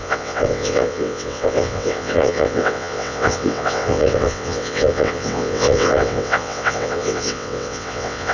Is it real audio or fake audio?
fake